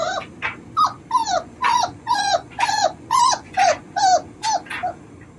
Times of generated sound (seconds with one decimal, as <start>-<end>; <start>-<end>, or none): 1.2-4.0